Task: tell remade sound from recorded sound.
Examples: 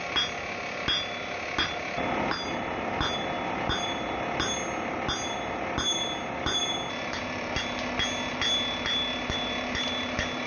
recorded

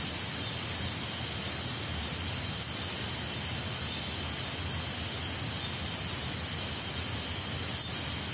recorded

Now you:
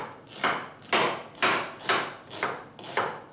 recorded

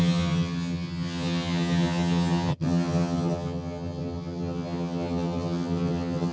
remade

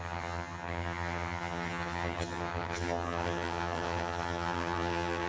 remade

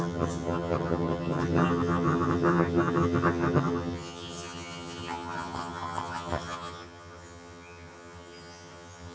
remade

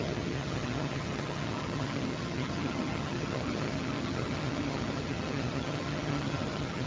remade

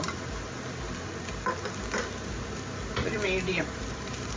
recorded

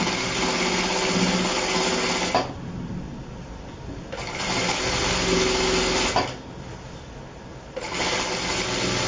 recorded